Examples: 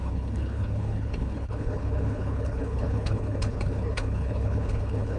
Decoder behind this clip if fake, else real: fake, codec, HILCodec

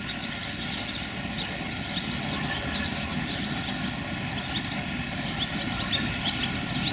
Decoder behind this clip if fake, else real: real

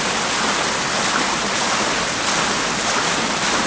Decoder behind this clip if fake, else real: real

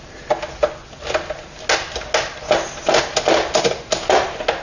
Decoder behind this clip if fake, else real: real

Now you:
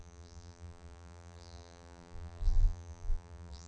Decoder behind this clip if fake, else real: fake, vocoder, BigVGAN v2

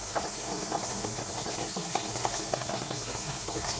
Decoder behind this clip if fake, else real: fake, codec, SNAC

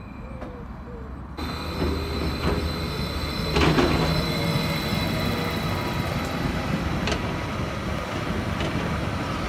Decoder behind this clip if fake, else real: real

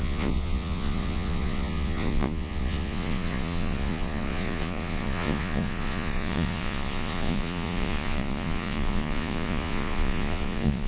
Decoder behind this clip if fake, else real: fake, vocoder, Vocos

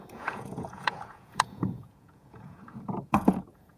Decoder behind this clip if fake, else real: fake, vocoder, Vocos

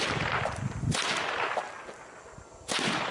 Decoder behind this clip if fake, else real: real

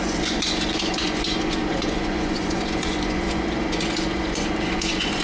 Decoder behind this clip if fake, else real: fake, vocoder, Vocos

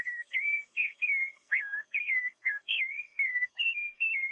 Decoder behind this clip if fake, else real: fake, codec, SNAC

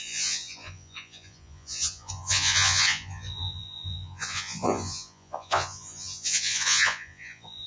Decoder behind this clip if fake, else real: fake, vocoder, Vocos